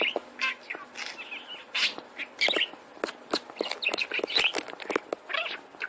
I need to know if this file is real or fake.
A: real